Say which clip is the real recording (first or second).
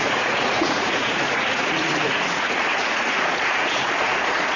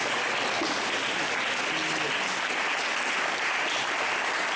second